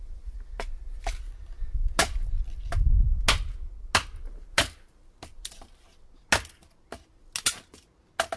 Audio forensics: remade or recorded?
recorded